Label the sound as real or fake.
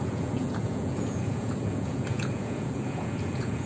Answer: fake